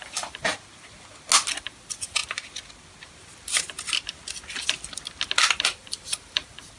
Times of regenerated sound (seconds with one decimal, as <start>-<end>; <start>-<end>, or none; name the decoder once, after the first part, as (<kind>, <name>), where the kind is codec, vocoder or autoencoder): 0.0-0.5 (vocoder, BigVGAN v2); 1.5-2.2; 5.6-6.8